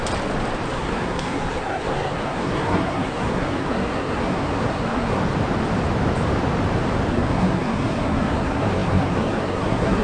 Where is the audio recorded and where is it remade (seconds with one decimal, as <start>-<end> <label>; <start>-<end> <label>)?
0.0-0.7 recorded; 0.7-5.2 remade; 5.2-7.1 recorded; 7.1-10.0 remade